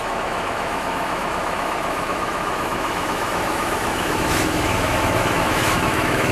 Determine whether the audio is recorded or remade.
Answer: remade